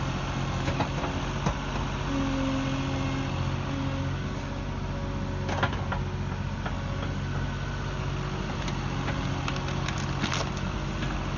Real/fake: real